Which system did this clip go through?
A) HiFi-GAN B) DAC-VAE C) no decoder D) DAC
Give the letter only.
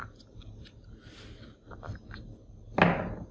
C